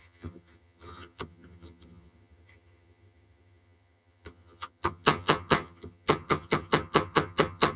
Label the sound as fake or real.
fake